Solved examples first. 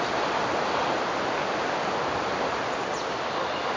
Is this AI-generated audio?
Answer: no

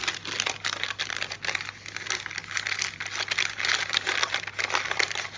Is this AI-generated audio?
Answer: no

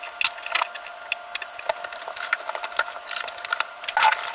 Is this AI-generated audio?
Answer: no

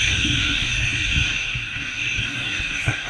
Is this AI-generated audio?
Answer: yes